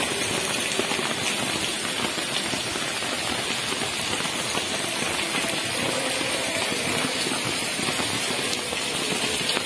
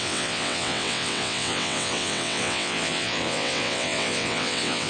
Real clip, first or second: first